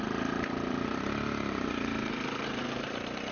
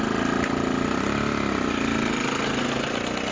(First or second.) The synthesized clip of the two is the first